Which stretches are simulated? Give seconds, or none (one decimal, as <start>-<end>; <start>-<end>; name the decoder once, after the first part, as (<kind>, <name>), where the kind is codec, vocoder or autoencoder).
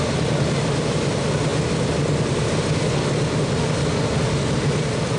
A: none